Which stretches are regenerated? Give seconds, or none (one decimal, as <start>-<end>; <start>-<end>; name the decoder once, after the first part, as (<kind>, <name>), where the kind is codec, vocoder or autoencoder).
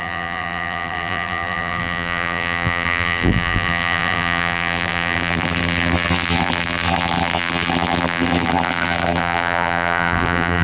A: 0.0-10.6 (vocoder, BigVGAN v2)